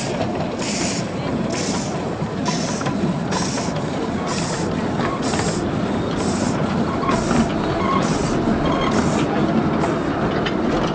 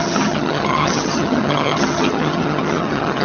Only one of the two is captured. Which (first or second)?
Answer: first